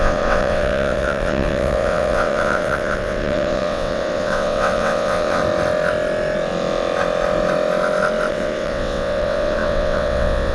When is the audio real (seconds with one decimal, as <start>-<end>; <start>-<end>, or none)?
5.4-8.3